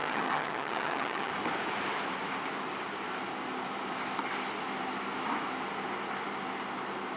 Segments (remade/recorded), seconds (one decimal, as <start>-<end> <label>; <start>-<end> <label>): 0.0-1.3 remade; 1.3-7.2 recorded